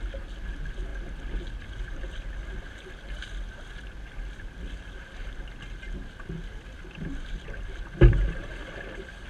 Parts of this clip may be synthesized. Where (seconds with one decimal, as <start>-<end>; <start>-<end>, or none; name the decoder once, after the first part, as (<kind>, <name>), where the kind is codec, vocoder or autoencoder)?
none